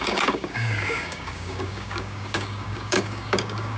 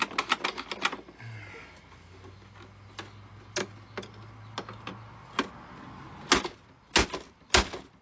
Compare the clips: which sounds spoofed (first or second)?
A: first